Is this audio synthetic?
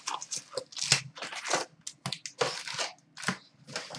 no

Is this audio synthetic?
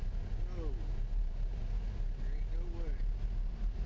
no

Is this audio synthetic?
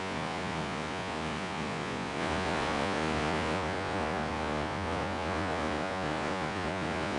yes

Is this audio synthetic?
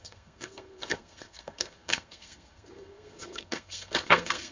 yes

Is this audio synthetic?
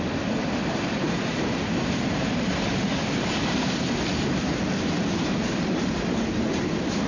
yes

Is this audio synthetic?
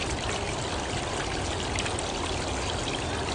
no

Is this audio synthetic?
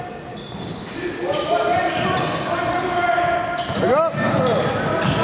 no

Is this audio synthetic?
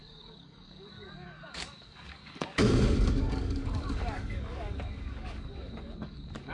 yes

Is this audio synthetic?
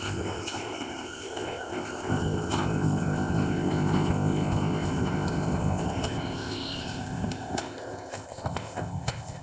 yes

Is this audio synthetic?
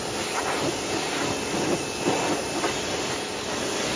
no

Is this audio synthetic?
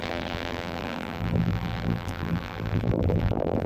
yes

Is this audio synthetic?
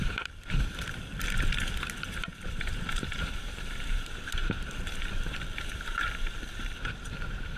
yes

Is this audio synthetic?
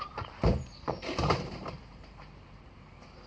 yes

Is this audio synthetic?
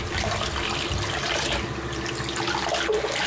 no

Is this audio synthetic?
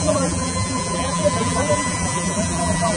yes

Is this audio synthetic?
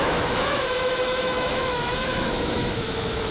yes